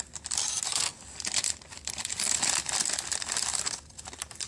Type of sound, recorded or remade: recorded